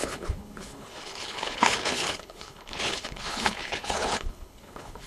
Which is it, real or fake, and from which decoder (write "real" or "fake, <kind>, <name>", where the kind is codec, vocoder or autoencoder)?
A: fake, codec, HILCodec